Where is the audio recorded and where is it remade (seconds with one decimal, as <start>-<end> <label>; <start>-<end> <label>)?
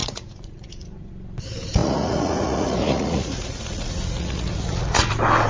0.0-1.1 remade; 1.1-1.8 recorded; 1.8-5.1 remade; 5.1-5.5 recorded